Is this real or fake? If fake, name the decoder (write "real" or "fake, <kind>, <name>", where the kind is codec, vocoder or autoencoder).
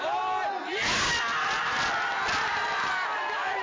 real